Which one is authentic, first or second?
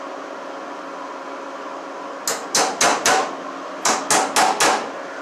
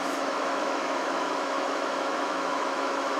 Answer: first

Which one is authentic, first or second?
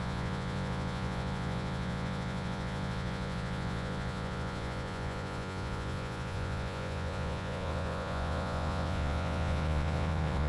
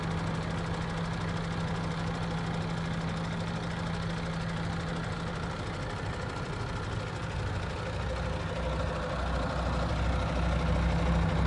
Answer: second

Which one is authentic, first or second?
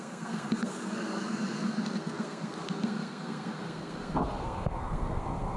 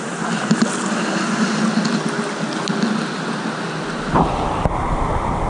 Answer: second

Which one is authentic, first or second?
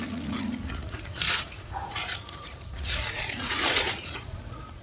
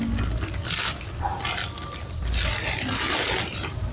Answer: second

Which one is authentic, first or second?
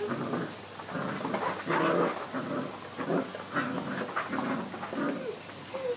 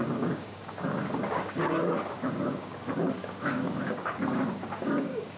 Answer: first